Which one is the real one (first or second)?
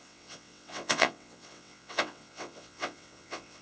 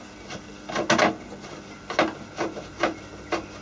second